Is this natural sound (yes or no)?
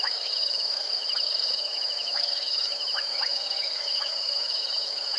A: no